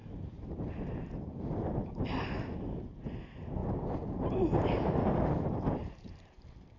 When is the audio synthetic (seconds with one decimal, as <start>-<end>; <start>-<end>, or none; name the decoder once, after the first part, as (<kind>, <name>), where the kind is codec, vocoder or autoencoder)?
0.0-0.7 (vocoder, BigVGAN v2); 1.8-2.5; 3.6-5.1; 5.8-6.8